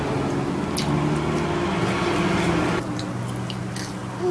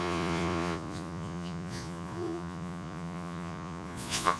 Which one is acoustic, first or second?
first